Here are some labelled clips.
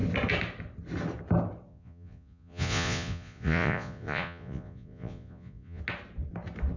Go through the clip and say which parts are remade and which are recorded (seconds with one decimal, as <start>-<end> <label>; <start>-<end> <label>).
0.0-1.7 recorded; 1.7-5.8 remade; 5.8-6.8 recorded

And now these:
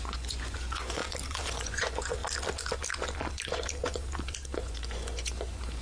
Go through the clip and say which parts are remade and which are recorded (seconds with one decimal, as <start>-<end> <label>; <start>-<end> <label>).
0.0-1.0 remade; 1.0-1.5 recorded; 1.5-2.2 remade; 2.2-4.6 recorded; 4.6-5.8 remade

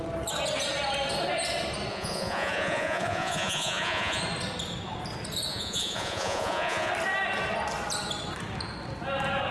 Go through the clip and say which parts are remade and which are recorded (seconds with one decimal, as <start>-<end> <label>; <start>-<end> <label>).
0.0-1.9 recorded; 1.9-4.2 remade; 4.2-5.5 recorded; 5.5-6.9 remade; 6.9-9.5 recorded